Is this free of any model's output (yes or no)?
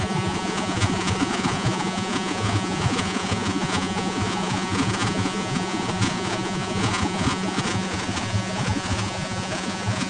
no